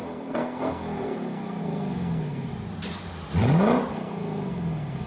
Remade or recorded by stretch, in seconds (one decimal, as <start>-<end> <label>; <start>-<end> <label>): 0.0-2.5 remade; 2.5-3.9 recorded; 3.9-5.1 remade